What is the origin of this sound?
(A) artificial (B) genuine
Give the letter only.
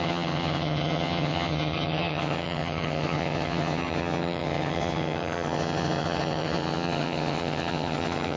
A